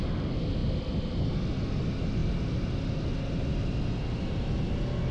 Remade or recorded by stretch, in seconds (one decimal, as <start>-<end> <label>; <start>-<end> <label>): 0.0-5.1 recorded